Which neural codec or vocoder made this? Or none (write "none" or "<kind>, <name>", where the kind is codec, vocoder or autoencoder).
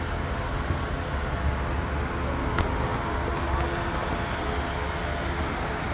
none